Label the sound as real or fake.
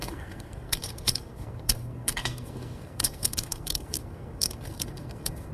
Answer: fake